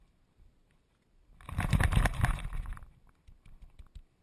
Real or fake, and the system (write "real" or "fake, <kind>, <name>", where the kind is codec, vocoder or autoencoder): real